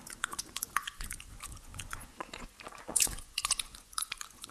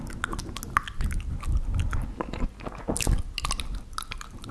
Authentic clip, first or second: second